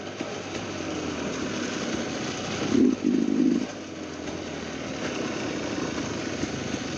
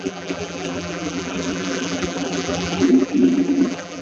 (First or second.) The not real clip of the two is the second